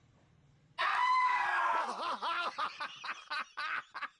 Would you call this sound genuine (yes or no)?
yes